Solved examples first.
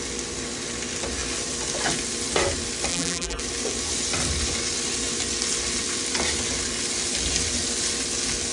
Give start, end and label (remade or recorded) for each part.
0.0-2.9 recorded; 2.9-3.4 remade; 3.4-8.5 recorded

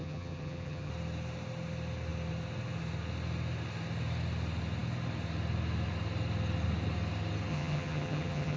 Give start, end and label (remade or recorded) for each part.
0.0-0.9 remade; 0.9-7.5 recorded; 7.5-8.6 remade